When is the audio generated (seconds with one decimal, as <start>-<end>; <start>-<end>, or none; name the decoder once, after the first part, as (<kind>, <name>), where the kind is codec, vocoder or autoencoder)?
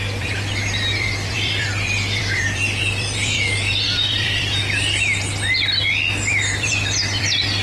0.0-4.6 (vocoder, BigVGAN v2); 5.9-7.6